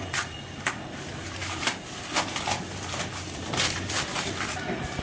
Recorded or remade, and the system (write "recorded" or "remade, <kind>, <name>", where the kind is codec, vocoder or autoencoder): recorded